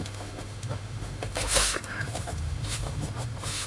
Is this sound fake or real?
fake